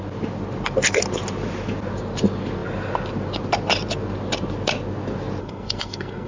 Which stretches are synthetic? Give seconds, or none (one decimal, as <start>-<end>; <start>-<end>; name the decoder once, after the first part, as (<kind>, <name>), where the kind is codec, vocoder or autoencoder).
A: 5.4-6.3 (codec, SNAC)